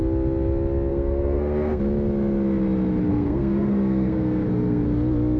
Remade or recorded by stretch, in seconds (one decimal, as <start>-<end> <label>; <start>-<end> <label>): 0.0-0.9 recorded; 0.9-1.8 remade; 1.8-3.1 recorded; 3.1-4.8 remade; 4.8-5.4 recorded